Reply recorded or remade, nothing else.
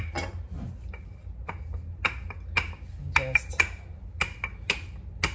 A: recorded